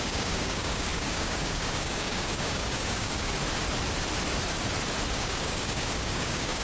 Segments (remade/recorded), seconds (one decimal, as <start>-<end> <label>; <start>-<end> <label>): 0.0-3.4 remade; 3.4-5.1 recorded; 5.1-6.6 remade